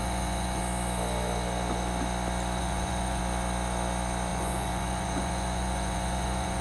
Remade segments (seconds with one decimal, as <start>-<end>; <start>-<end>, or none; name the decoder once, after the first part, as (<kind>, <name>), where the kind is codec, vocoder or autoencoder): 0.0-0.6 (vocoder, Vocos); 2.6-3.2; 4.3-6.6